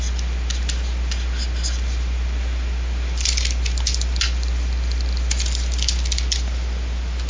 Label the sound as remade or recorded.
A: recorded